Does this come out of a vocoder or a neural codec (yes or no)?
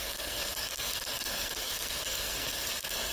yes